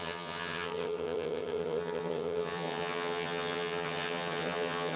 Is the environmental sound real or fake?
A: fake